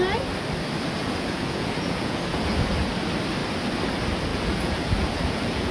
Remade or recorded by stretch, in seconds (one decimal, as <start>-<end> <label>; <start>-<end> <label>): 0.0-1.0 recorded; 1.0-2.9 remade; 2.9-4.3 recorded; 4.3-5.7 remade